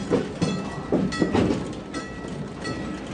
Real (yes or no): yes